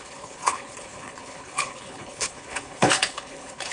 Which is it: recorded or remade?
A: remade